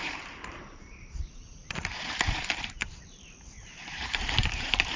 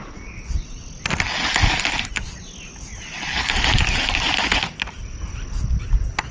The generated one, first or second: first